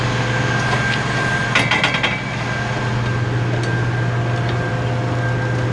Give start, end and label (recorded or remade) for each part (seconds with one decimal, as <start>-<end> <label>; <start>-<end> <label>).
0.0-5.7 recorded